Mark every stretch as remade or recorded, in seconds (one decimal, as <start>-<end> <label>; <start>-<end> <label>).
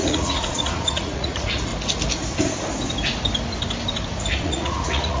0.0-1.7 remade; 1.7-4.4 recorded; 4.4-5.2 remade